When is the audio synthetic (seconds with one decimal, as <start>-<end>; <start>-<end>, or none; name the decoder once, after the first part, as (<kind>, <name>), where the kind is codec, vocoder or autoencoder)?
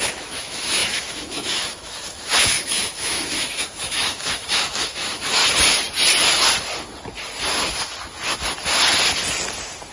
0.0-5.4 (autoencoder, DAC-VAE)